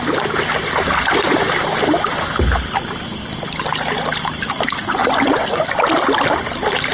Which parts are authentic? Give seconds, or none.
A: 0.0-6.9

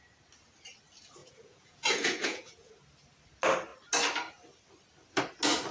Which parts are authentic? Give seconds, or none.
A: 0.0-1.2; 2.7-5.7